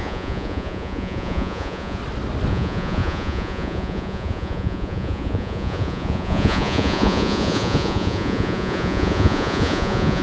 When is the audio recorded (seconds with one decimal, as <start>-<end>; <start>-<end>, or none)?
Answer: 2.0-2.5